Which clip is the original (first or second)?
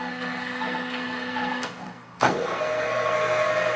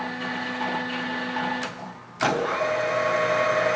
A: second